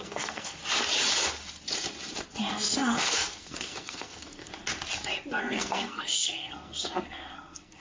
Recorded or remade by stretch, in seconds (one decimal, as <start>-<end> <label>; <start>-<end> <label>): 0.0-0.6 remade; 0.6-2.5 recorded; 2.5-4.5 remade; 4.5-5.4 recorded; 5.4-7.8 remade